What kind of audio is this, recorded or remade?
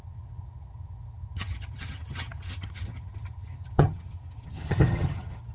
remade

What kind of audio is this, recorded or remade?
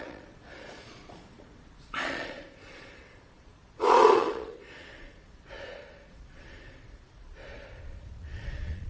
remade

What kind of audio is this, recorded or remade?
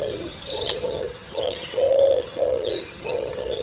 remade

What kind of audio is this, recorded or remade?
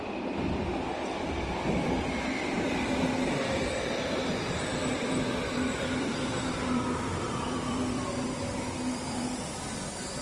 remade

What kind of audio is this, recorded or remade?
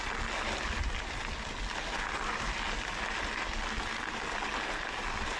recorded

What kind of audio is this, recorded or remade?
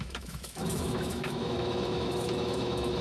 remade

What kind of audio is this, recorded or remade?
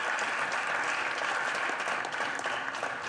recorded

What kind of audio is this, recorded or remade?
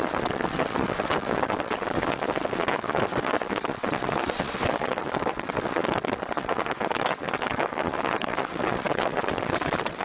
remade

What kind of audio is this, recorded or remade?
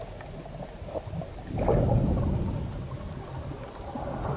recorded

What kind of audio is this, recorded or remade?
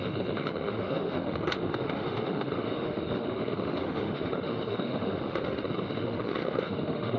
remade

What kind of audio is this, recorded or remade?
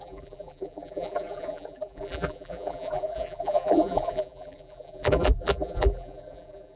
remade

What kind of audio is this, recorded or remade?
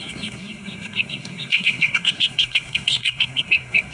remade